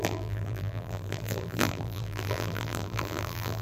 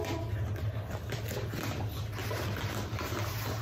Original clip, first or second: second